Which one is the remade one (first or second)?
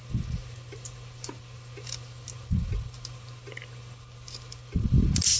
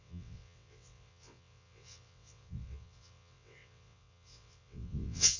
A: second